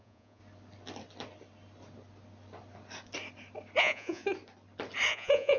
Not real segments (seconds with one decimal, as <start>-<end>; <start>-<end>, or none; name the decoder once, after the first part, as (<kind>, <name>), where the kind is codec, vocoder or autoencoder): 0.0-0.4 (vocoder, Vocos); 3.8-4.2; 5.1-5.6

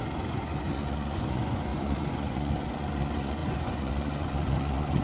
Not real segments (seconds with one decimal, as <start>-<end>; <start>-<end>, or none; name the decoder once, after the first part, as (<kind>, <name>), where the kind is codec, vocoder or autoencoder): 0.0-5.0 (vocoder, Vocos)